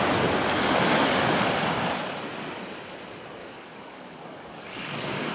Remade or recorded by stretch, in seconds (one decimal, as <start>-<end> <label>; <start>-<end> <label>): 0.0-3.4 recorded; 3.4-5.3 remade